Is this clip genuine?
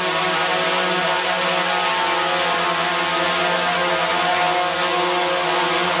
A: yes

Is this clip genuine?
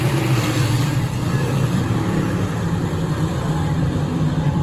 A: no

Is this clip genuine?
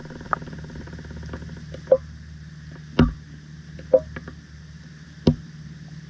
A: yes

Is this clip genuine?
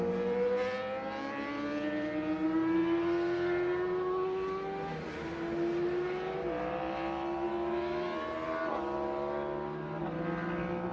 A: yes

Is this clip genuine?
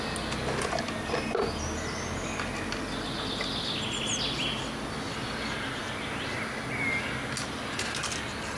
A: yes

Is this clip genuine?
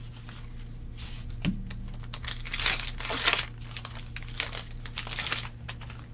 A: yes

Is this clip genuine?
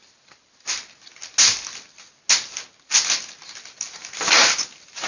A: yes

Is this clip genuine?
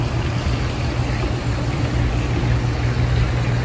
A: yes